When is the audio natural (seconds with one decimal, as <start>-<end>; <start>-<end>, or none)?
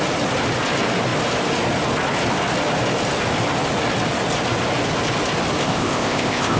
0.0-5.6